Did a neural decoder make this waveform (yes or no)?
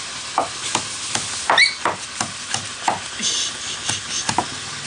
no